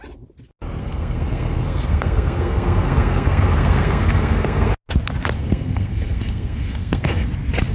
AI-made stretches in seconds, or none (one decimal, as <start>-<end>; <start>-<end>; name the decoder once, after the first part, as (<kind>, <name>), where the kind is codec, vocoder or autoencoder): 0.8-4.7 (codec, SNAC); 5.4-7.3